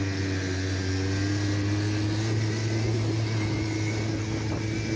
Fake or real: real